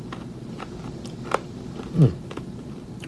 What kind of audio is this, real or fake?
real